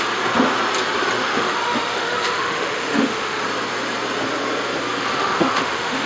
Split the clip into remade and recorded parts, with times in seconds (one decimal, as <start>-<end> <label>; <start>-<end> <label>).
0.0-1.2 recorded; 1.2-3.4 remade; 3.4-5.1 recorded; 5.1-6.1 remade